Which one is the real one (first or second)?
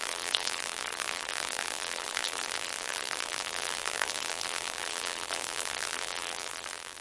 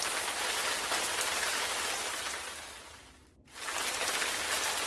second